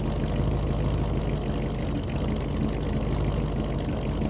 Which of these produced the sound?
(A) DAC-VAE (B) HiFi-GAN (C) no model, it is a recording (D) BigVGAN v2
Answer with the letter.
C